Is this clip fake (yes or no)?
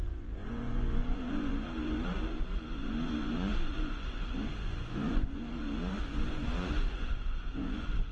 yes